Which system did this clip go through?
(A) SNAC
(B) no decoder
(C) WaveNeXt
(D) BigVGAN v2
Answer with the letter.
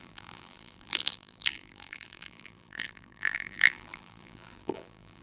D